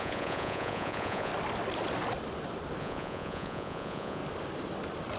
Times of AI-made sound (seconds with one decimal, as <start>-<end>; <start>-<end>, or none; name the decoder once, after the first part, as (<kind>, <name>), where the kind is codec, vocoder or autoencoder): 0.0-1.3 (vocoder, Vocos); 2.8-4.2